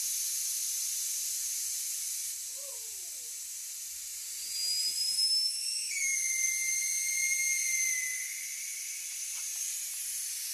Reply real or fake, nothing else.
real